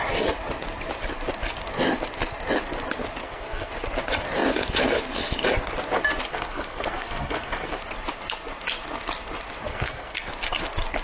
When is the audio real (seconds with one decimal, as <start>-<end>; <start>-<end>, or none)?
0.0-3.2; 3.7-6.3; 7.8-9.7; 10.3-11.0